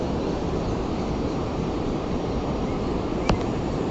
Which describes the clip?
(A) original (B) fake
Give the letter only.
B